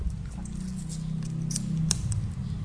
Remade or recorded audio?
recorded